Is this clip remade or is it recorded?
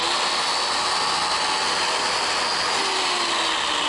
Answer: recorded